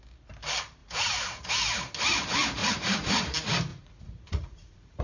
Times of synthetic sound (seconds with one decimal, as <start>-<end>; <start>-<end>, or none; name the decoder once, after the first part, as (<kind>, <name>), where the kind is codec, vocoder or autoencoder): 0.8-1.5 (vocoder, Vocos); 2.6-3.2; 3.7-5.0